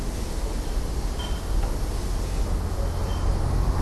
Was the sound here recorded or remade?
recorded